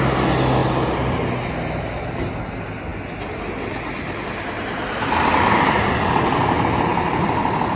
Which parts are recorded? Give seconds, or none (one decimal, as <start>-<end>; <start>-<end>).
0.0-7.8